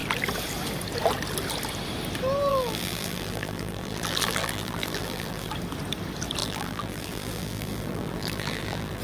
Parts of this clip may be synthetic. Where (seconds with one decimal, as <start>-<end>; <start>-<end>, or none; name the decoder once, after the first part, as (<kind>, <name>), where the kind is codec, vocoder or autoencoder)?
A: 2.5-5.5 (vocoder, BigVGAN v2); 6.4-9.0